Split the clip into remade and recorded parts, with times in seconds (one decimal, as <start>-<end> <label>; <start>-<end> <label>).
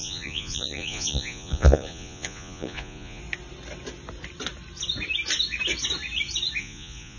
0.0-3.2 remade; 3.2-6.6 recorded; 6.6-7.2 remade